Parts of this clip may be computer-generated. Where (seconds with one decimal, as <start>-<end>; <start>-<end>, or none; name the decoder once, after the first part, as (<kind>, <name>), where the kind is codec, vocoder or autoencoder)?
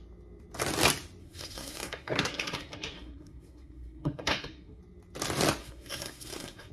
1.2-4.8 (codec, SNAC); 5.6-6.7